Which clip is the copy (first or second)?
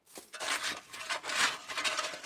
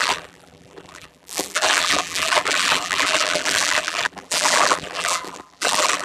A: second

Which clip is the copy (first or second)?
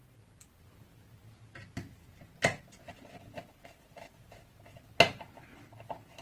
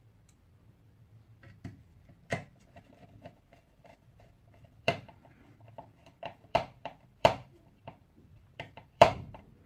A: second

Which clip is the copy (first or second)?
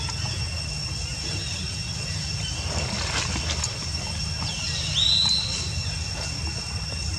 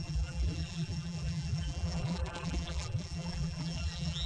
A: second